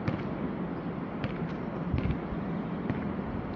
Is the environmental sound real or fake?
real